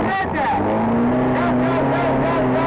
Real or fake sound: real